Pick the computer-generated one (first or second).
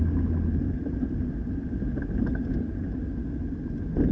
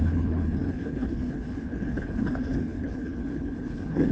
second